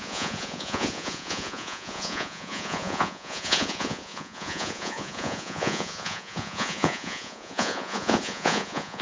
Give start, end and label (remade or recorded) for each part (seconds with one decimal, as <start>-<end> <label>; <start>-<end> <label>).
0.0-9.0 remade